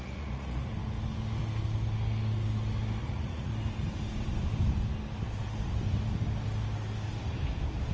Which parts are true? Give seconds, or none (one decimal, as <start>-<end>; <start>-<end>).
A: 0.7-3.0; 3.5-7.9